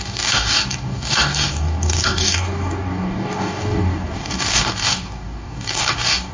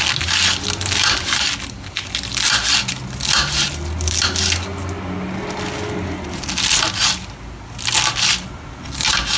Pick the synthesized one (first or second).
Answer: first